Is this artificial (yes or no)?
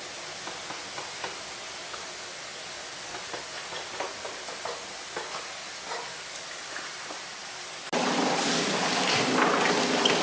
no